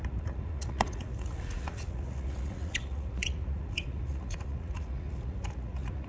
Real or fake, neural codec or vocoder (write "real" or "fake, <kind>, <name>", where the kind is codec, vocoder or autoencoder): fake, vocoder, Vocos